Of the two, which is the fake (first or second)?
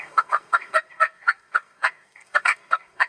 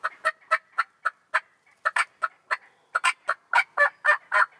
first